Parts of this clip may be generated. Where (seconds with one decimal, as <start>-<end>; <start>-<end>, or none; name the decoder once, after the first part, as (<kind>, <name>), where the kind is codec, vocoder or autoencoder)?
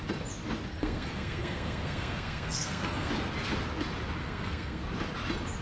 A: 0.7-3.1 (codec, SNAC); 4.2-4.8